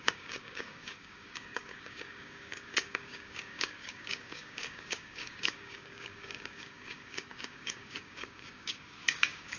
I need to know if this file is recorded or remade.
remade